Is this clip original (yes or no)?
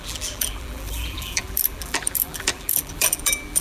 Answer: no